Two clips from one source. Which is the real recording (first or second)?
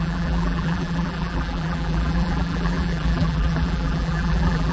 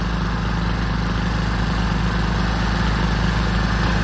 second